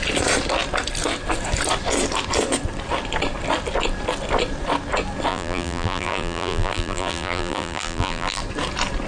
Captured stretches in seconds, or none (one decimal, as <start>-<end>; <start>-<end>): 0.0-5.3; 8.4-9.1